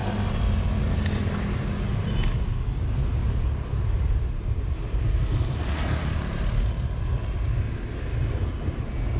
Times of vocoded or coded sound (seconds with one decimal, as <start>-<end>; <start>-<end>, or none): 3.2-7.1